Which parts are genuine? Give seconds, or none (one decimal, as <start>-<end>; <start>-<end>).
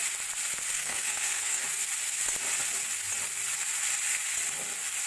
0.0-0.7; 1.6-5.1